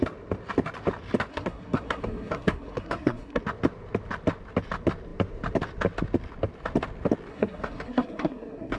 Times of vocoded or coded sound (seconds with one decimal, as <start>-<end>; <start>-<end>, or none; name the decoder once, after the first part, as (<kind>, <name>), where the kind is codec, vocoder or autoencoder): 1.3-3.4 (codec, SNAC); 7.3-8.8